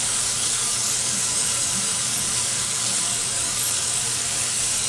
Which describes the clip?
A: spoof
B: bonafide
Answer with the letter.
A